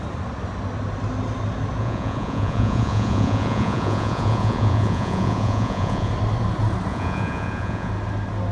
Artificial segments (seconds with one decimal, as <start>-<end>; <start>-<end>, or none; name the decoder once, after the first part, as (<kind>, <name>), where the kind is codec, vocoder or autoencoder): 1.8-6.1 (vocoder, Vocos); 6.9-7.9